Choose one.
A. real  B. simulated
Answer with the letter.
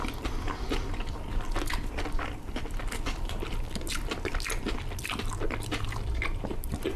A